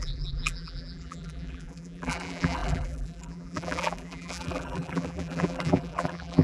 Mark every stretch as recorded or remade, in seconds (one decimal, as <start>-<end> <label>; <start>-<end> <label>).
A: 0.0-6.4 remade